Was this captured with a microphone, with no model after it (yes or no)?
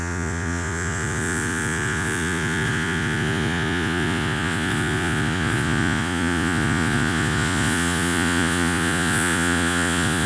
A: no